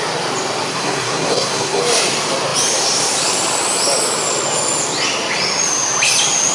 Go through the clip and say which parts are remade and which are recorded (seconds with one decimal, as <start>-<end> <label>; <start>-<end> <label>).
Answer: 0.0-0.7 recorded; 0.7-1.8 remade; 1.8-6.5 recorded